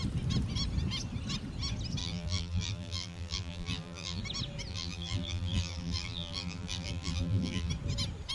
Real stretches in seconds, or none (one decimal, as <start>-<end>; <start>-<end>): 0.0-2.0; 4.2-4.7; 7.7-8.3